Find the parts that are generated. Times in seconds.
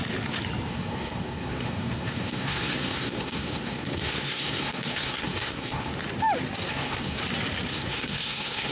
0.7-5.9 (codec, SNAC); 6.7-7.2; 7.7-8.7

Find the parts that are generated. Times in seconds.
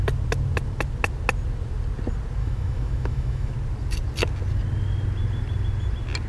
2.4-3.5 (autoencoder, DAC-VAE)